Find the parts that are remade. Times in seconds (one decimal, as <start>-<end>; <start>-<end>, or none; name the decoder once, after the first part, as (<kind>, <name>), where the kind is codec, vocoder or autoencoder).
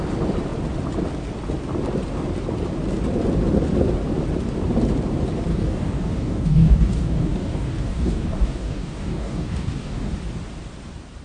5.5-10.1 (codec, DAC)